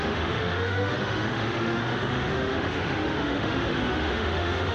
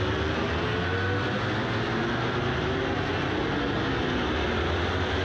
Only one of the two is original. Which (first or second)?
second